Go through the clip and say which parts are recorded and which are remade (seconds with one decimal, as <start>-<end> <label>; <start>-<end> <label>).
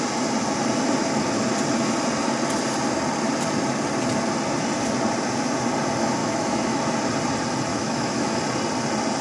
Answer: 0.0-6.2 recorded; 6.2-6.8 remade; 6.8-7.7 recorded; 7.7-8.4 remade; 8.4-9.2 recorded